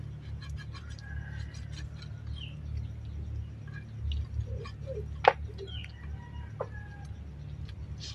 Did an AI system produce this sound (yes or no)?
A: no